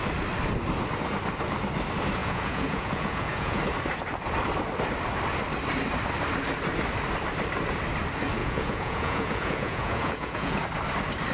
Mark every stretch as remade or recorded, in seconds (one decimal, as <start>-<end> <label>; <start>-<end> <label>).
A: 0.0-2.2 recorded; 2.2-3.6 remade; 3.6-8.4 recorded; 8.4-10.6 remade; 10.6-11.3 recorded